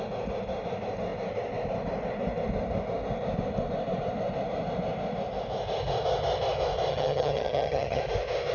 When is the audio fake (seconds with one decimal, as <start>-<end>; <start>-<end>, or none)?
6.9-8.0